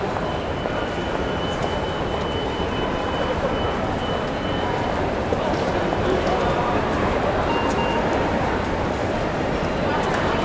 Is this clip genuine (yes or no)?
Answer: no